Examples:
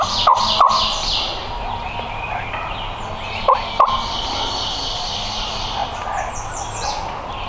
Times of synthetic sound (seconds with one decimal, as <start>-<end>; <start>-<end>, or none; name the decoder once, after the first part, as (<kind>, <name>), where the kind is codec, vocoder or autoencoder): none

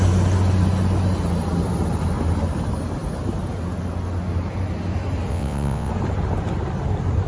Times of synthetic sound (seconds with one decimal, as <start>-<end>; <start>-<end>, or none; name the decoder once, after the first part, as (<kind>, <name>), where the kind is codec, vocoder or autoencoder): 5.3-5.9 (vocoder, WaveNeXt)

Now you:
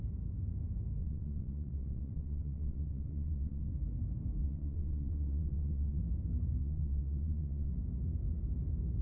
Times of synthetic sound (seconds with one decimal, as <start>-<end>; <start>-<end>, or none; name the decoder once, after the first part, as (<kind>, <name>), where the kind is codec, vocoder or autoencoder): 1.0-3.7 (vocoder, WaveNeXt); 4.4-6.0; 6.6-7.7

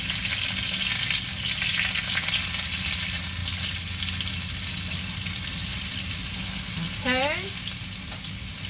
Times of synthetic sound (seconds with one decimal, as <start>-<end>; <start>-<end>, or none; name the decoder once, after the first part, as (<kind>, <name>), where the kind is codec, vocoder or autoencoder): none

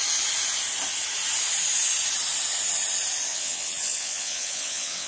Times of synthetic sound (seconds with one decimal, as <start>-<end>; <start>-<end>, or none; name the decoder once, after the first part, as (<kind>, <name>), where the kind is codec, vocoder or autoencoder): 3.3-5.1 (vocoder, WaveNeXt)

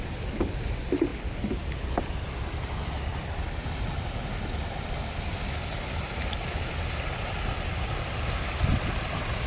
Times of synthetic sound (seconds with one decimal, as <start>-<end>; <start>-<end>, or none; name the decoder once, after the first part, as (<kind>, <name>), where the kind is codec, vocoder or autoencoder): none

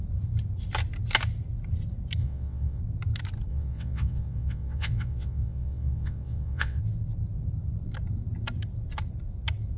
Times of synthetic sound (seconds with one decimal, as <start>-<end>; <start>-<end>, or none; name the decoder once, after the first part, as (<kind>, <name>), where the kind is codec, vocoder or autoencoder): 2.2-2.8 (vocoder, WaveNeXt); 3.5-6.8

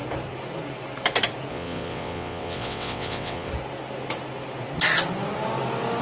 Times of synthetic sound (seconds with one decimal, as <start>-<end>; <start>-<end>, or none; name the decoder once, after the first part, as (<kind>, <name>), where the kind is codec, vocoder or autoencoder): 1.5-3.5 (vocoder, WaveNeXt)